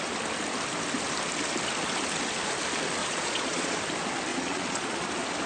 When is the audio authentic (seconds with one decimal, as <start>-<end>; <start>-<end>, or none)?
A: 0.0-3.0; 3.8-4.3; 5.1-5.5